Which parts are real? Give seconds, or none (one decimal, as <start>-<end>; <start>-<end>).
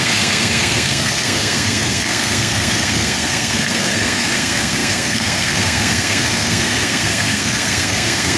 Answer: none